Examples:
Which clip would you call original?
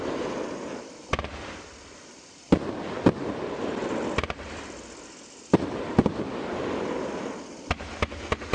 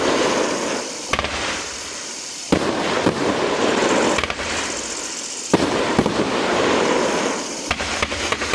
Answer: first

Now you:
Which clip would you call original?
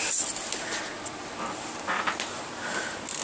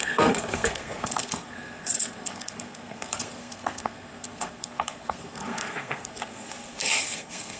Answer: first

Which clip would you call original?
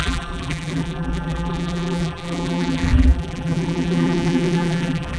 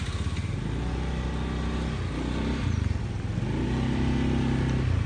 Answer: second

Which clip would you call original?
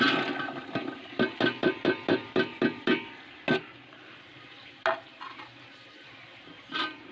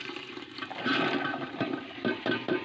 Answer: first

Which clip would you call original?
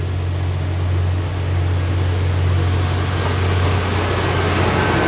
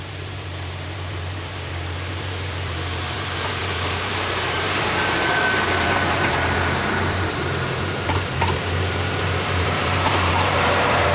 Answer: first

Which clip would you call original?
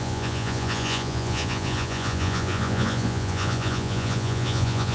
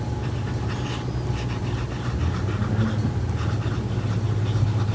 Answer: second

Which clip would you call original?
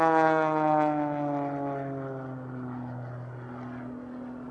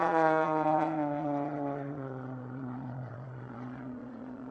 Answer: first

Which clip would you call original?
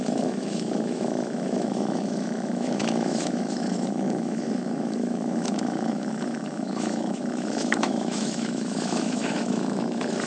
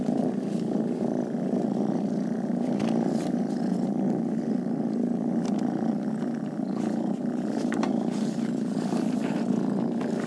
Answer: second